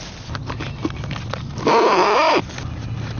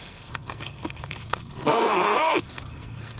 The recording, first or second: first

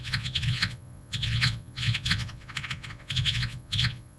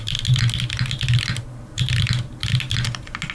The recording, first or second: second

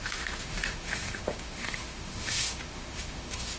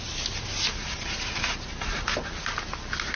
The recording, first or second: second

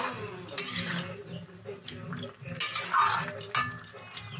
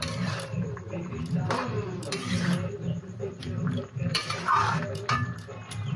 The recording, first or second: first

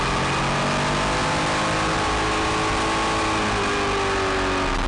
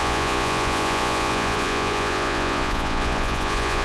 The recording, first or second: first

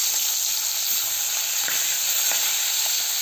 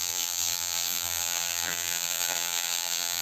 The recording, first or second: first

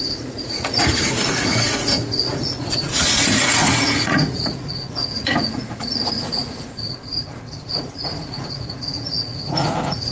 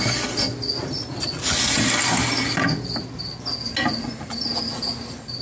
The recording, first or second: second